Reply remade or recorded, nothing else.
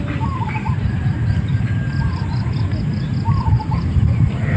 remade